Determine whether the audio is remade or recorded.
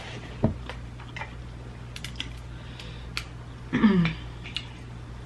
recorded